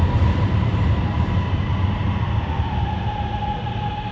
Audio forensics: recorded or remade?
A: recorded